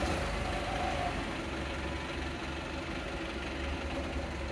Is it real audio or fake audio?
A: real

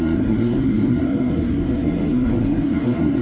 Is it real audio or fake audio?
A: fake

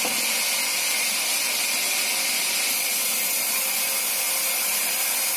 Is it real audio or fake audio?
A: real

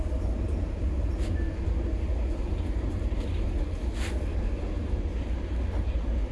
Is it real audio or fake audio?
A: real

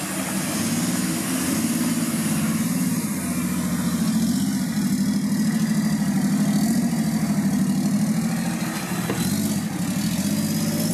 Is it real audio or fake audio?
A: real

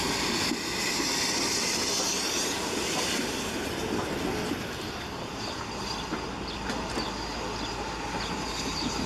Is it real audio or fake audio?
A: real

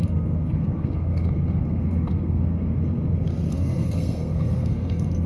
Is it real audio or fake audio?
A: fake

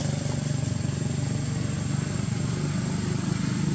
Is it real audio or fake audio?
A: real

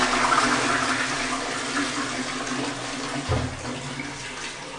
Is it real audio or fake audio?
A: real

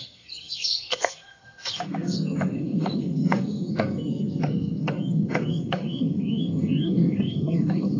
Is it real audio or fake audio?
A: fake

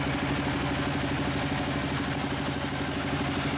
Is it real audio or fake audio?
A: real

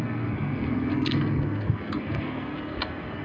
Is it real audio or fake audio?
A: fake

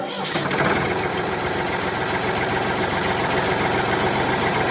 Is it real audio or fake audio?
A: real